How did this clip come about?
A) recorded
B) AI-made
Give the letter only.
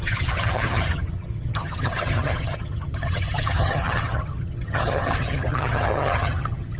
B